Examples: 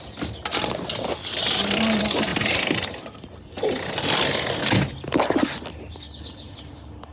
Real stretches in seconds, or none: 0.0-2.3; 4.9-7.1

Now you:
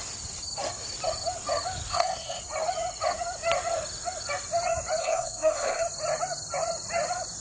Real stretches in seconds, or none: 0.0-1.9; 2.4-5.0; 5.8-7.4

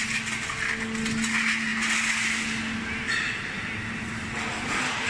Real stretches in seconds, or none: 0.0-5.1